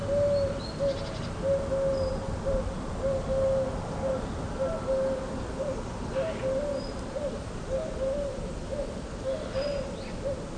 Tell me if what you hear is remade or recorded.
recorded